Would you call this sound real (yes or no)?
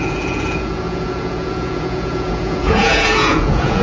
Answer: no